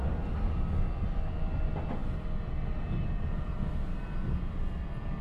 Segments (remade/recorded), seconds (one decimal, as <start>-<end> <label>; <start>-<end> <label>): 0.0-5.2 recorded